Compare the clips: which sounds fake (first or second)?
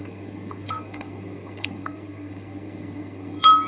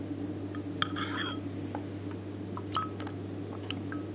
first